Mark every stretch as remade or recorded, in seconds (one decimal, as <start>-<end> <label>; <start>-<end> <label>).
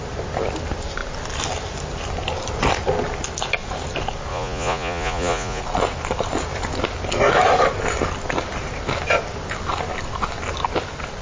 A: 0.0-4.3 recorded; 4.3-5.6 remade; 5.6-11.2 recorded